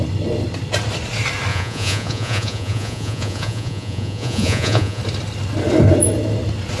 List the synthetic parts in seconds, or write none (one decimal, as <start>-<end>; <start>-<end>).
1.5-5.0

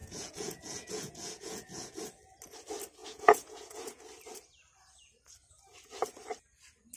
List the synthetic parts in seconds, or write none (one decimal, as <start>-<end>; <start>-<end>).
0.0-2.0; 3.0-4.0

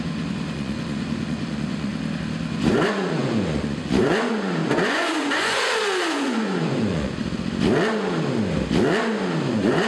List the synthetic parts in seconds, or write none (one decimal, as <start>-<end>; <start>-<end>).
0.0-1.9; 2.5-7.2; 9.5-9.9

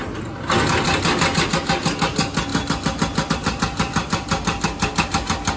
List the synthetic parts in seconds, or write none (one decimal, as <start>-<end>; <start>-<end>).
none

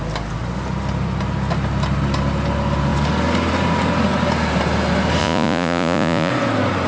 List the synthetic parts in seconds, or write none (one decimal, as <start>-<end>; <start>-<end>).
5.2-6.3

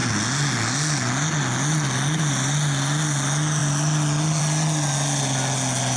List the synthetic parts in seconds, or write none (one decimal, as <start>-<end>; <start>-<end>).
none